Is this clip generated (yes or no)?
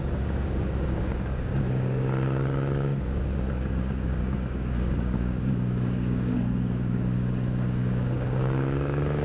yes